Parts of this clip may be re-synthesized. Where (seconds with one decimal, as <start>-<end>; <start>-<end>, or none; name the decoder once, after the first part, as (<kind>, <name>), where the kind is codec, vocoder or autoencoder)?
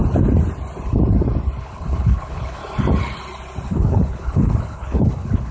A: 1.6-2.6 (codec, HILCodec); 3.7-5.5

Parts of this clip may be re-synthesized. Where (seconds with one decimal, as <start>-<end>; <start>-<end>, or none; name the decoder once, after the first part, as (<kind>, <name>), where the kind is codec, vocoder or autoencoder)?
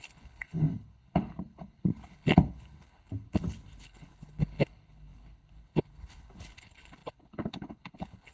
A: 0.0-8.3 (codec, HILCodec)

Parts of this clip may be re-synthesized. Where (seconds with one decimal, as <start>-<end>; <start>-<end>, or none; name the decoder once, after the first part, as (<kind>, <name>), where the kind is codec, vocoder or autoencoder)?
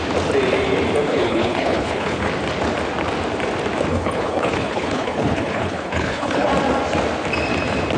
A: 1.1-2.3 (codec, HILCodec); 3.9-6.5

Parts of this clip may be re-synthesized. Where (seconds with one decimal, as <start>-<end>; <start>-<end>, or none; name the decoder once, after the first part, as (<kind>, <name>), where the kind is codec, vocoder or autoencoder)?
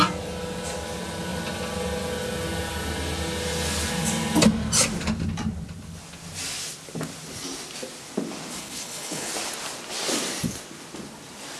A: 8.6-9.3 (codec, HILCodec)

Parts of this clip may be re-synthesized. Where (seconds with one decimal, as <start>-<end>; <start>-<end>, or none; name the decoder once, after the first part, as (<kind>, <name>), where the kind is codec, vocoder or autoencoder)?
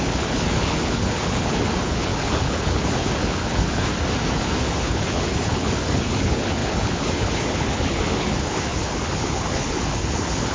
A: 0.0-3.9 (codec, HILCodec); 4.4-10.5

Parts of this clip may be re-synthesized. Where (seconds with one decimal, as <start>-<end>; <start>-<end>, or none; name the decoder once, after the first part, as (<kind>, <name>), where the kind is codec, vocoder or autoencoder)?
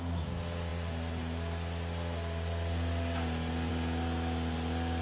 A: none